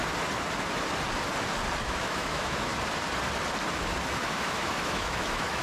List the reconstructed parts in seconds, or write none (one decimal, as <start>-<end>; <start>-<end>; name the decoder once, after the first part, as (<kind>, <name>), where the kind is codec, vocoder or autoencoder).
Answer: 1.8-2.7 (autoencoder, DAC-VAE); 4.2-5.6